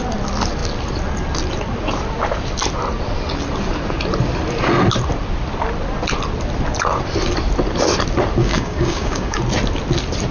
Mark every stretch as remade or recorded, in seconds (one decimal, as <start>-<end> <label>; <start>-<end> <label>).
0.0-8.4 recorded; 8.4-9.4 remade; 9.4-10.3 recorded